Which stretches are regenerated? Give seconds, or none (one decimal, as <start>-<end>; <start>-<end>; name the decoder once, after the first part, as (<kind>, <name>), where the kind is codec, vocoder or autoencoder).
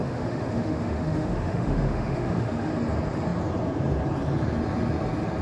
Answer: 0.0-2.7 (autoencoder, DAC-VAE)